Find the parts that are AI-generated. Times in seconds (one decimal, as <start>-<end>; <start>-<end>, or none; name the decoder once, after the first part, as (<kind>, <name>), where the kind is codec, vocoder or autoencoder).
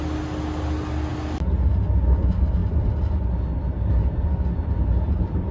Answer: none